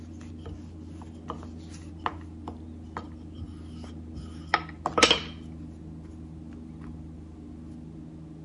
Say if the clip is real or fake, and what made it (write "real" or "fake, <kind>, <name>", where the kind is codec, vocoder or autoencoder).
real